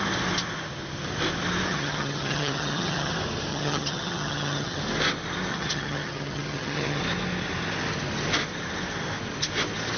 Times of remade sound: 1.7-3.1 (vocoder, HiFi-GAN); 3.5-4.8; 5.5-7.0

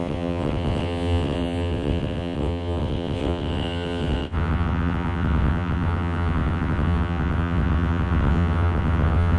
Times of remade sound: 0.0-9.4 (vocoder, WaveNeXt)

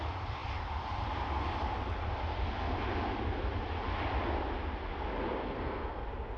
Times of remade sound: 5.4-6.0 (codec, SNAC)